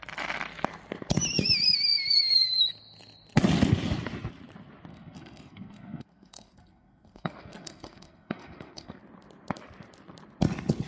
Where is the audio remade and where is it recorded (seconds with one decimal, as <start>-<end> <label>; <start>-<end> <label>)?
0.0-4.9 recorded; 4.9-9.0 remade; 9.0-10.9 recorded